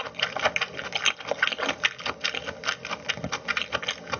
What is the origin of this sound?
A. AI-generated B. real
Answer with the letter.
B